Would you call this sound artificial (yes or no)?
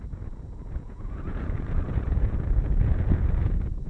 yes